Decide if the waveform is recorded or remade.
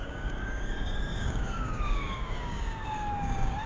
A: remade